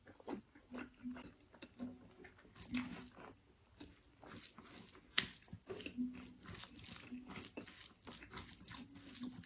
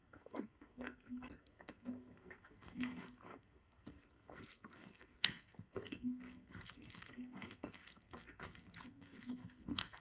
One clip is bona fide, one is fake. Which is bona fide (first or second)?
first